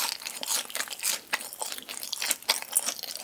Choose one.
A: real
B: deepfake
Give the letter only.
A